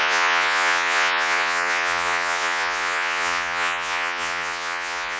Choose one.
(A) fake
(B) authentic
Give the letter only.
A